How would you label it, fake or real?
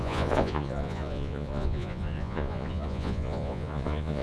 fake